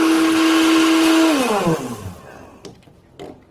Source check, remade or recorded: recorded